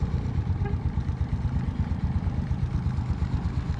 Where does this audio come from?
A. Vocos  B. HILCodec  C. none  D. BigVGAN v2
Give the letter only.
C